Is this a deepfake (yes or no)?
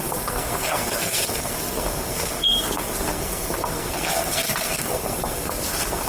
yes